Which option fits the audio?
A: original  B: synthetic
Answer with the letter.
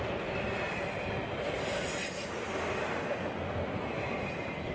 B